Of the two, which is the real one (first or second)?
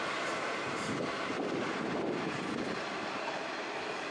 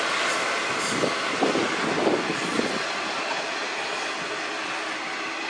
second